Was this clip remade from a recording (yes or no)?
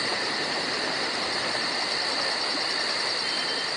no